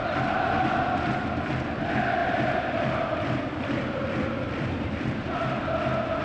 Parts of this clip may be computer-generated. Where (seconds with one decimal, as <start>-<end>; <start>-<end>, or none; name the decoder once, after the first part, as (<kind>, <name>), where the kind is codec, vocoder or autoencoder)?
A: 2.2-5.3 (vocoder, BigVGAN v2)